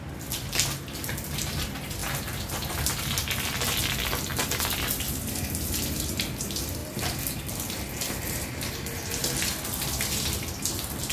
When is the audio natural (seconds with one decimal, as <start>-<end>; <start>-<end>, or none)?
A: 0.0-11.1